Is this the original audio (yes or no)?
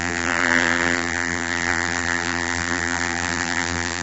no